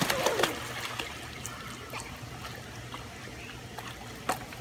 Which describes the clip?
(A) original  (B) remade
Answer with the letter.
A